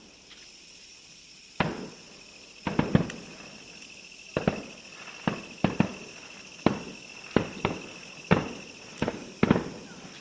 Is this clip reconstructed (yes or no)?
no